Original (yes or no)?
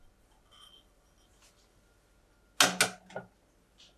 yes